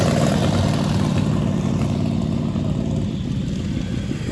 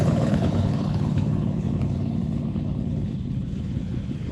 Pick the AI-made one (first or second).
second